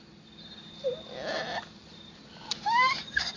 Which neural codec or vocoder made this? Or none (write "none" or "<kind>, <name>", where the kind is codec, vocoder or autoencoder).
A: none